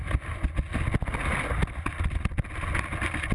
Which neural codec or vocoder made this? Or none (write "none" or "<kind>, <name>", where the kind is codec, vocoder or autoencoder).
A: none